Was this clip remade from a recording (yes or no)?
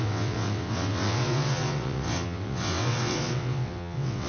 yes